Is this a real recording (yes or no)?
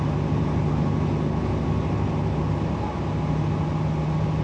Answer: yes